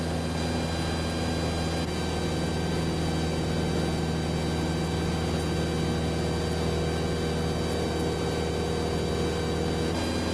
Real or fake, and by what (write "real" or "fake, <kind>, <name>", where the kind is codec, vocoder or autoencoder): real